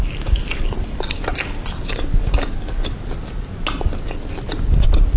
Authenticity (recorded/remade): recorded